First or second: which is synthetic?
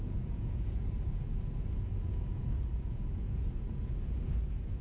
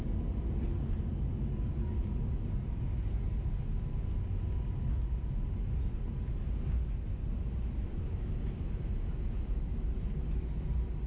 first